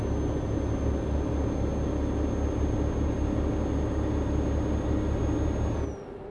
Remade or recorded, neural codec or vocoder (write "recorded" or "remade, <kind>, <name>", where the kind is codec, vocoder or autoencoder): recorded